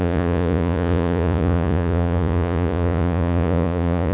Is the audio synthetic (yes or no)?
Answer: yes